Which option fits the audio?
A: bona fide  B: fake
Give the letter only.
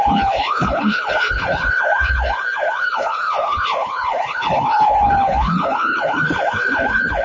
B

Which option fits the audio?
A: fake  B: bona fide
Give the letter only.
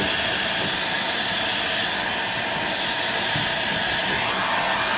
B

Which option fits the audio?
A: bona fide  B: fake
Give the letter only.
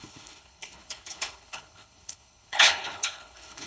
B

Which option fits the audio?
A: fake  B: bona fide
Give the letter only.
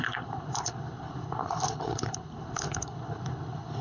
A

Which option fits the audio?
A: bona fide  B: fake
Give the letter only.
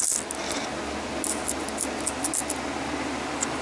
A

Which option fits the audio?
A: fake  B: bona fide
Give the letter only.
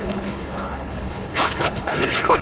A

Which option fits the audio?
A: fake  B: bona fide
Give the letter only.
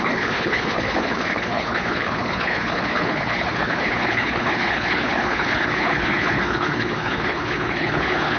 A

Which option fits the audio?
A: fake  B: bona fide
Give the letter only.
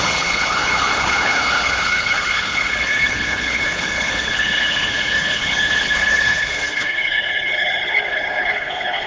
A